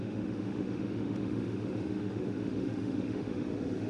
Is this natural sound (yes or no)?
no